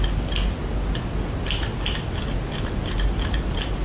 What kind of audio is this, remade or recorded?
recorded